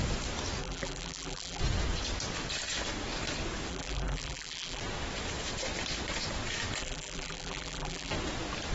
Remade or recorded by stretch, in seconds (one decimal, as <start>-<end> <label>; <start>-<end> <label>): 0.0-0.6 recorded; 0.6-1.6 remade; 1.6-3.7 recorded; 3.7-4.8 remade; 4.8-6.8 recorded; 6.8-8.1 remade; 8.1-8.7 recorded